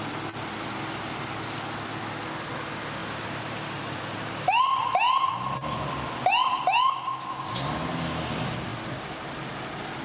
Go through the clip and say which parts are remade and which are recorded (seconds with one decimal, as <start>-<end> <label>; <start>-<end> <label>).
0.0-3.0 recorded; 3.0-4.6 remade; 4.6-10.0 recorded